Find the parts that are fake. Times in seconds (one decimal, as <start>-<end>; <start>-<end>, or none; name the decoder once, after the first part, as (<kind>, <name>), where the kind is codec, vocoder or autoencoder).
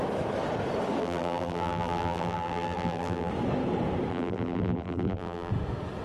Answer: 1.0-3.3 (vocoder, BigVGAN v2); 4.1-5.5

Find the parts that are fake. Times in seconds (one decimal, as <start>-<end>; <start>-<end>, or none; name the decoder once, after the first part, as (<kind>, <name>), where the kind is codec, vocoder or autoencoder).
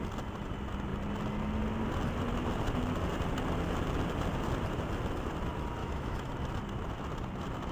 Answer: 5.8-6.3 (autoencoder, DAC-VAE)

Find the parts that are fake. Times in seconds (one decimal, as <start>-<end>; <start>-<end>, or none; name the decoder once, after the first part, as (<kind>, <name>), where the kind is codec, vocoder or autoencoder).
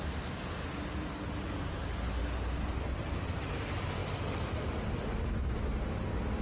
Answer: 2.9-3.5 (vocoder, BigVGAN v2)